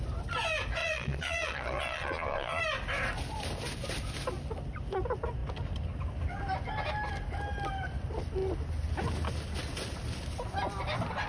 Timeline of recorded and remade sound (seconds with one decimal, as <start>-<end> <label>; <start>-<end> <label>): 0.0-0.8 recorded; 0.8-2.6 remade; 2.6-11.3 recorded